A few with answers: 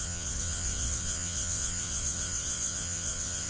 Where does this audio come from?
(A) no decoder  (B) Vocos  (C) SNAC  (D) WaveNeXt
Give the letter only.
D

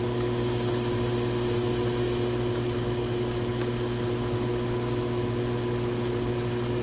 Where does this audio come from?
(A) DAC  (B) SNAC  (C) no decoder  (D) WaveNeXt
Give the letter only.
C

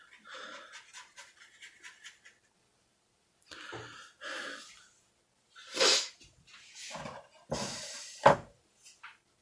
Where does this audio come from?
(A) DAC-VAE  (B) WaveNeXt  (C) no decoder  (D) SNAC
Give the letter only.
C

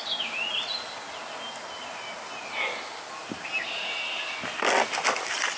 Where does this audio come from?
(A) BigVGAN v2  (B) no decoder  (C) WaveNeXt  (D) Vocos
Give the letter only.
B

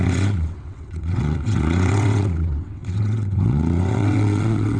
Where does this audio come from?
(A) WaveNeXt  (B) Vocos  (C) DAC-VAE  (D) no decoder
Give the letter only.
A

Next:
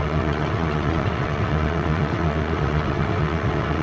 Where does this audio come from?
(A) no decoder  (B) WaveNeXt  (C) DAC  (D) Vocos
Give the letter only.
B